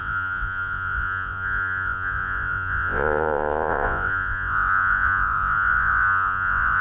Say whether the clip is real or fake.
fake